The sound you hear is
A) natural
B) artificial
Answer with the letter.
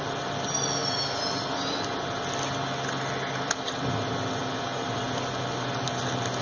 A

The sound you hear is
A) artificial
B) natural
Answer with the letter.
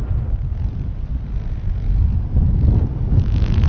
B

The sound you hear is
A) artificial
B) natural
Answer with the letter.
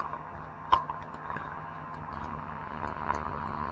A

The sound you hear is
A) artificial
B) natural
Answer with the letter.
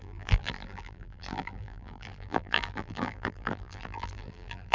A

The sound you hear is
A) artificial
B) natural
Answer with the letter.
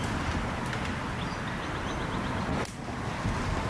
B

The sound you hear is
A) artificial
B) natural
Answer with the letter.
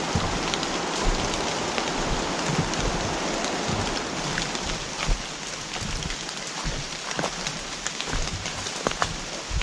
B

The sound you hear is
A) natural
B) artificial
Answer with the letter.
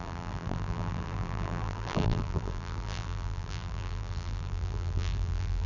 B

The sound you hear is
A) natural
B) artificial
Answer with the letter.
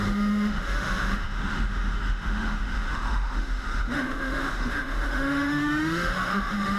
B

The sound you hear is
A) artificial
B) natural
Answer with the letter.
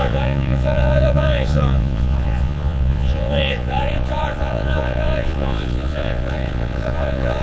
A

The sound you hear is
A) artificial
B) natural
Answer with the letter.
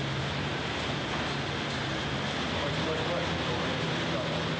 B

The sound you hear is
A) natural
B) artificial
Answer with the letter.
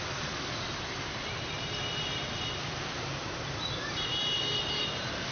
A